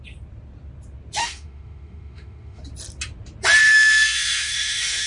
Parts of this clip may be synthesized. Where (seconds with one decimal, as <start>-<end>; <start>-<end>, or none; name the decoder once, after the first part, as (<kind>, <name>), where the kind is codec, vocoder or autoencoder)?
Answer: 1.2-2.6 (autoencoder, DAC-VAE); 3.7-5.1